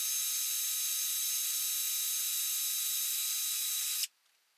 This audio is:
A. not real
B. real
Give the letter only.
B